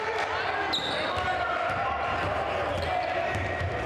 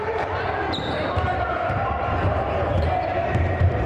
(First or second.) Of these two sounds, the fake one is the second